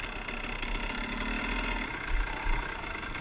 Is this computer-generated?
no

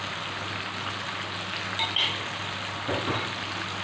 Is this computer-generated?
no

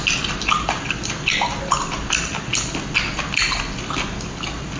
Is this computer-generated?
no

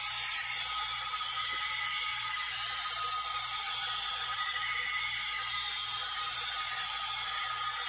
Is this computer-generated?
no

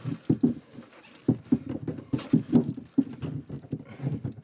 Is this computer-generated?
no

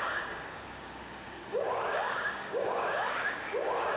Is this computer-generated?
yes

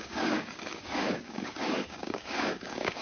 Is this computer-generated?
yes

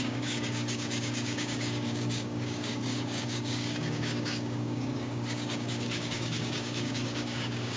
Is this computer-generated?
yes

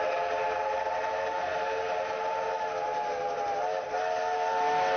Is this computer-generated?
no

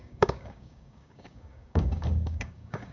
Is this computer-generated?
yes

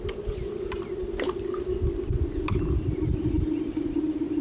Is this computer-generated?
no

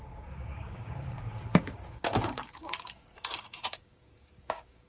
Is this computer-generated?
yes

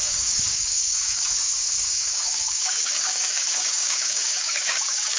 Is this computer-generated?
yes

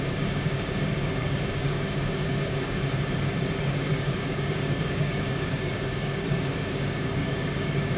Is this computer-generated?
yes